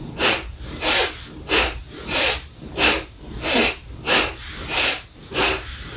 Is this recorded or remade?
remade